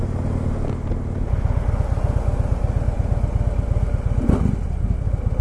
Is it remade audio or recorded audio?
recorded